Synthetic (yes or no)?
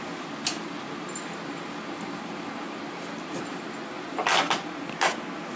no